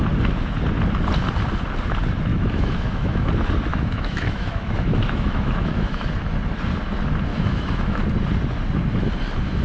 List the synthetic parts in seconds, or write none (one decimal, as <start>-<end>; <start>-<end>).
2.3-3.3; 3.7-6.1; 7.3-8.0